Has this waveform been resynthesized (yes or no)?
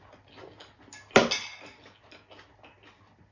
no